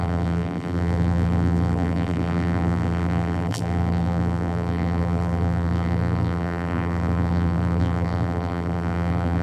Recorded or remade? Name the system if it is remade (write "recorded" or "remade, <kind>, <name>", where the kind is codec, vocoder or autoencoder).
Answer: remade, vocoder, BigVGAN v2